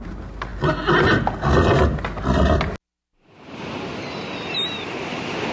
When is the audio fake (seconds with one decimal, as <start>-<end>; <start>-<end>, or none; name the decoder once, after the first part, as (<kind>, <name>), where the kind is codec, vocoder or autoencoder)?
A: none